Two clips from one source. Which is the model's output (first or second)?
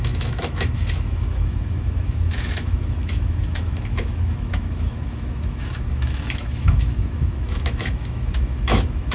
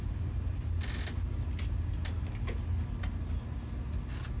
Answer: first